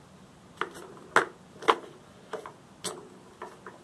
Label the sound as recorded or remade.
recorded